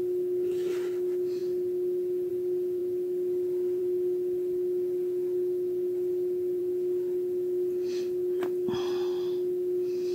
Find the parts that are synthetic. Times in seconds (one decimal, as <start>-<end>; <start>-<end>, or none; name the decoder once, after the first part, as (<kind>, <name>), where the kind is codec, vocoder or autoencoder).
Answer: none